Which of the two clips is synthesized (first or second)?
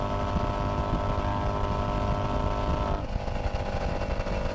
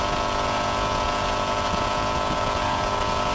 second